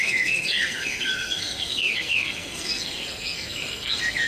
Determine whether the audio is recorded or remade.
remade